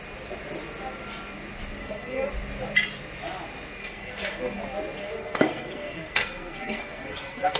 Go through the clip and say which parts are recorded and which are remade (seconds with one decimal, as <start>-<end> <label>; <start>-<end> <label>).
0.0-1.8 recorded; 1.8-2.3 remade; 2.3-3.8 recorded; 3.8-4.6 remade; 4.6-5.0 recorded; 5.0-7.6 remade